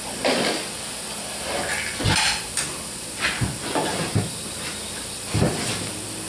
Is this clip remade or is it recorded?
recorded